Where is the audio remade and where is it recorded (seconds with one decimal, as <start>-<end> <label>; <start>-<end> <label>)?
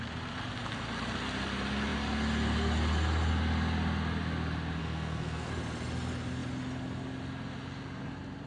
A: 0.0-4.8 recorded; 4.8-5.5 remade; 5.5-8.5 recorded